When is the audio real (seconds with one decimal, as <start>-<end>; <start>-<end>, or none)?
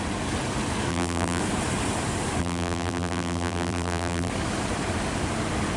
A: 0.0-0.9; 1.4-2.4; 4.3-5.8